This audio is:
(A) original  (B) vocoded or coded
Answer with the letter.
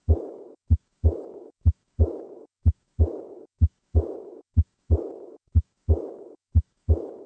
B